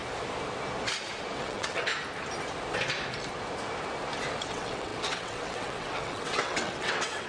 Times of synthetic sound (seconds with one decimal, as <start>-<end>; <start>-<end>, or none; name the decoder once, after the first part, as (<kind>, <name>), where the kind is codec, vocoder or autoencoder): 1.4-1.9 (vocoder, WaveNeXt); 4.5-7.3